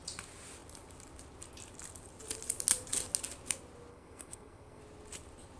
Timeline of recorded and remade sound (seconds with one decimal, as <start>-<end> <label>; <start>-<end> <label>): 0.0-3.9 recorded; 3.9-4.8 remade; 4.8-5.6 recorded